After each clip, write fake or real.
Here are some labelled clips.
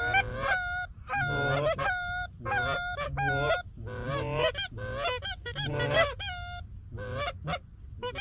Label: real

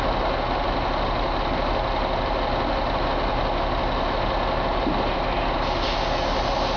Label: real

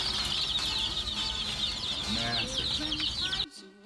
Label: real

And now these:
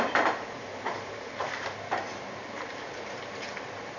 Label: fake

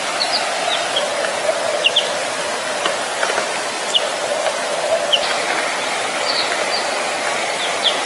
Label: fake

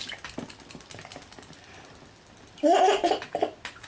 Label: real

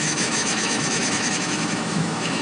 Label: fake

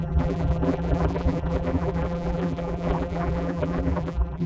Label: fake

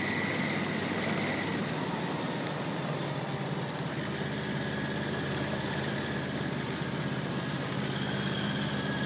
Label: real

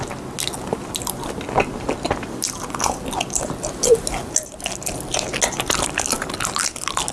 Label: real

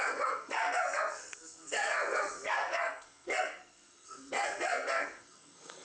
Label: fake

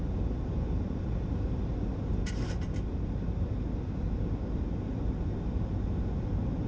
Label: real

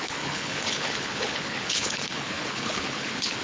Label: fake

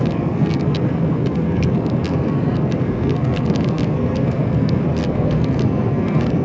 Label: fake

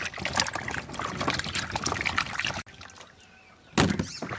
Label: real